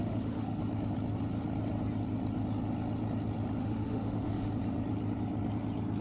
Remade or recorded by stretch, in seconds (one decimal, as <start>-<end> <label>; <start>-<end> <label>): 0.0-0.6 remade; 0.6-3.6 recorded; 3.6-4.5 remade; 4.5-6.0 recorded